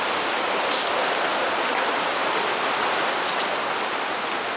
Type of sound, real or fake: real